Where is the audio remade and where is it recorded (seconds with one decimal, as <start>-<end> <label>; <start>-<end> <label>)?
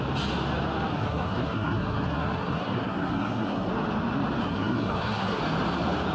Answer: 0.0-0.9 recorded; 0.9-3.7 remade; 3.7-4.4 recorded; 4.4-5.4 remade; 5.4-6.1 recorded